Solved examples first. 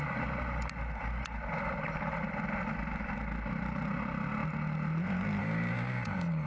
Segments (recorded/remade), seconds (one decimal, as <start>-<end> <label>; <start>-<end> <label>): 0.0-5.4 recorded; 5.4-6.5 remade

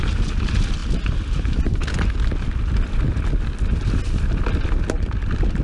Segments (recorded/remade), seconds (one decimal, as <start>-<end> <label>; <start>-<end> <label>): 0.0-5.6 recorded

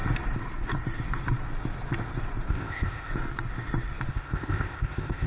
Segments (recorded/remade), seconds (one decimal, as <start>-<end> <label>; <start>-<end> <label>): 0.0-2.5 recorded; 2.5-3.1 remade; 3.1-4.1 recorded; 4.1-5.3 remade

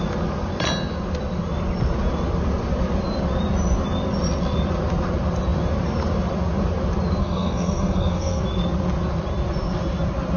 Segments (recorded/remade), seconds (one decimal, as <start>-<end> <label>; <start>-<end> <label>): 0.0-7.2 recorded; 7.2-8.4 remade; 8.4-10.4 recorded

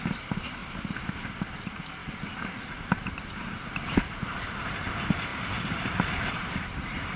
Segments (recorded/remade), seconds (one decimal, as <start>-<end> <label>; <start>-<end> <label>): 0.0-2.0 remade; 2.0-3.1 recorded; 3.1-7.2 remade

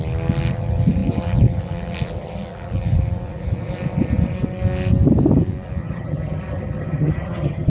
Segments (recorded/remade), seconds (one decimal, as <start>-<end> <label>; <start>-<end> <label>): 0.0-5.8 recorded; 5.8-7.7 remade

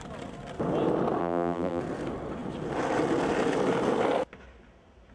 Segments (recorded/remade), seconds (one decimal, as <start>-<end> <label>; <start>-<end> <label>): 0.0-1.2 recorded; 1.2-1.8 remade; 1.8-5.1 recorded

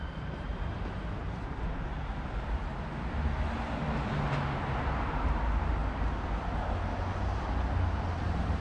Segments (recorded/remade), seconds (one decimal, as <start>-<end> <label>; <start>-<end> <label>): 0.0-0.5 remade; 0.5-1.2 recorded; 1.2-2.6 remade; 2.6-4.9 recorded; 4.9-5.8 remade; 5.8-7.9 recorded; 7.9-8.6 remade